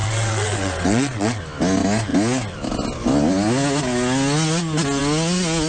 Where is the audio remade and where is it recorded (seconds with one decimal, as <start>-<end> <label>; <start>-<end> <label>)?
0.0-1.4 remade; 1.4-5.7 recorded